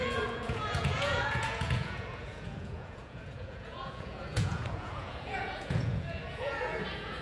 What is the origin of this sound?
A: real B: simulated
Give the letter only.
B